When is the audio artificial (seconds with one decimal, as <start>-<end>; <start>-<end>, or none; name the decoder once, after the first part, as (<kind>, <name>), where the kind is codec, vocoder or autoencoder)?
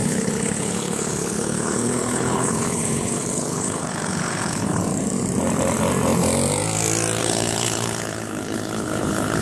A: 0.0-4.8 (codec, HILCodec); 7.2-9.4